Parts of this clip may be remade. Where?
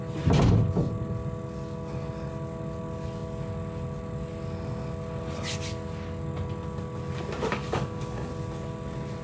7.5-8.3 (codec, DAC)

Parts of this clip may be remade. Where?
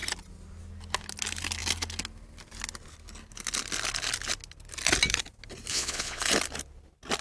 5.7-6.2 (vocoder, Vocos)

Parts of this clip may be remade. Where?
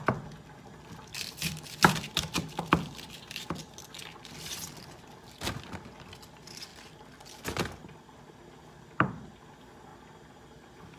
1.1-5.3 (vocoder, BigVGAN v2); 9.9-11.0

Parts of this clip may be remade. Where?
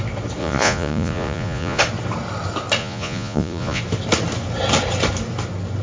0.4-1.8 (vocoder, Vocos); 2.8-3.8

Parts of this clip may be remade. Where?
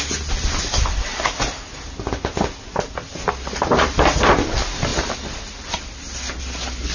none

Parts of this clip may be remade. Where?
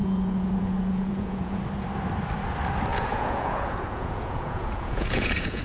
0.0-1.6 (vocoder, Vocos); 2.9-5.6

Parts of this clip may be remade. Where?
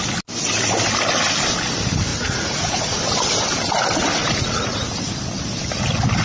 2.1-3.0 (vocoder, Vocos); 4.2-4.8